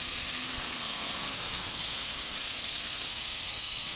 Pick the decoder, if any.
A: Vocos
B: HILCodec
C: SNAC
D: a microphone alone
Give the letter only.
C